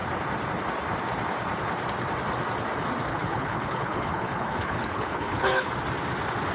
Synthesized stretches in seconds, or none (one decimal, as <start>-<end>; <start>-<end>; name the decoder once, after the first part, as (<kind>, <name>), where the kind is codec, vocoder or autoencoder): 3.1-5.7 (codec, HILCodec)